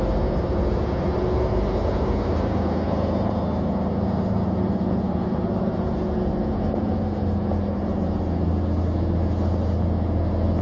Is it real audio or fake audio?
real